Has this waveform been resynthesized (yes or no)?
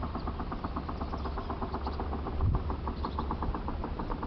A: no